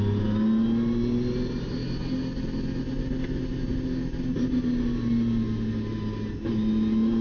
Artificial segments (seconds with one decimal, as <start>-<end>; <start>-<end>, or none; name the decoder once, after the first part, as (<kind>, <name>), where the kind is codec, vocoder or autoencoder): none